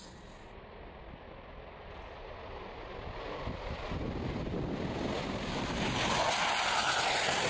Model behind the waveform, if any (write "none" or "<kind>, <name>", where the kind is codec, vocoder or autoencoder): none